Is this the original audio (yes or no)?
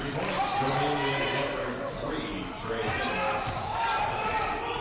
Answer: yes